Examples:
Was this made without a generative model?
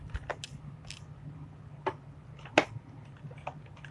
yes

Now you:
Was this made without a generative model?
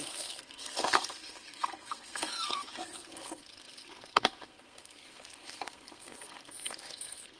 no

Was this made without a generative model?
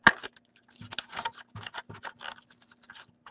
yes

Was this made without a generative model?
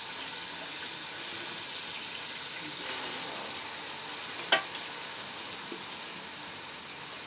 yes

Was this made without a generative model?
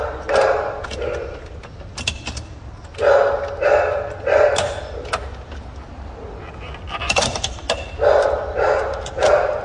yes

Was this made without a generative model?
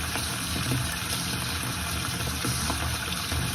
yes